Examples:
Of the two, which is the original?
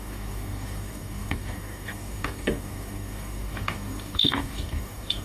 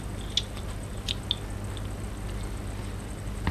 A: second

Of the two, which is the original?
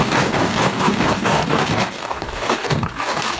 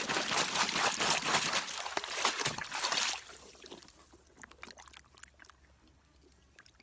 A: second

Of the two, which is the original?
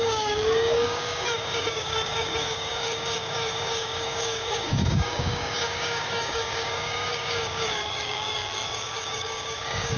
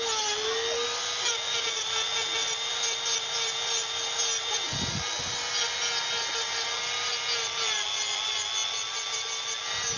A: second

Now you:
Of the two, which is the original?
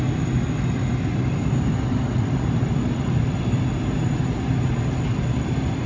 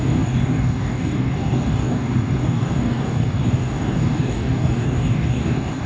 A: first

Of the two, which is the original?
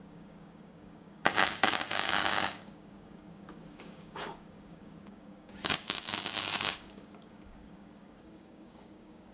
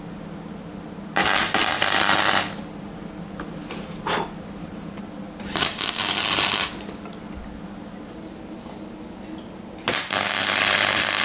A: second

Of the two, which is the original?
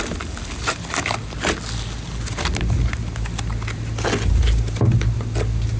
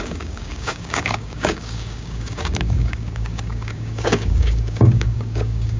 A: first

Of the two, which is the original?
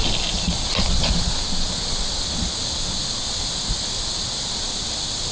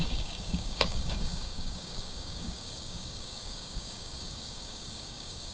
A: first